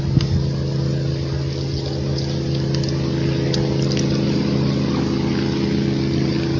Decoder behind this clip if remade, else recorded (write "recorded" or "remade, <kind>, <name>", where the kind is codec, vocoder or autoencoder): recorded